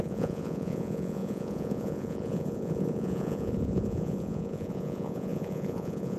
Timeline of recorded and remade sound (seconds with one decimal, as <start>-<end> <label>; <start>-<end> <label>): 0.0-6.2 remade